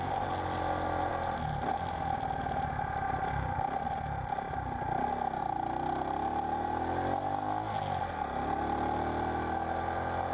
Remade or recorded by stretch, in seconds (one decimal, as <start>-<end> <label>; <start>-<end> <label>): 0.0-10.3 recorded